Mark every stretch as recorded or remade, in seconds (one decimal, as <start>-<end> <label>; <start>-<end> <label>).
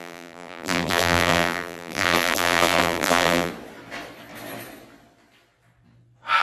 0.0-3.5 remade; 3.5-6.4 recorded